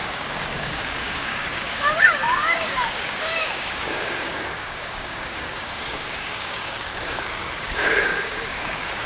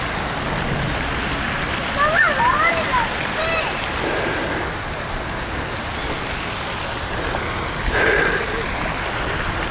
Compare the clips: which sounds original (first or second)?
second